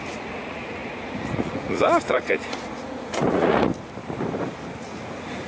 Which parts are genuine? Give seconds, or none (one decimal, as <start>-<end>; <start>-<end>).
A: 3.7-4.8